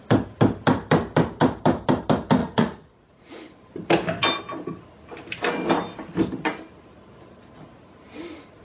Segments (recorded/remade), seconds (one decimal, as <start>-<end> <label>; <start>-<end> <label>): 0.0-2.4 recorded; 2.4-3.4 remade; 3.4-8.6 recorded